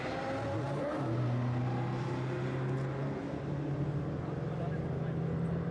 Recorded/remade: recorded